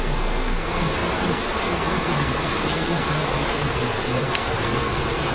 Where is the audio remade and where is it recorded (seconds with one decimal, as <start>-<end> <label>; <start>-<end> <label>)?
0.0-5.3 remade